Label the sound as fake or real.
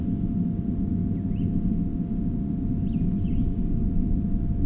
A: real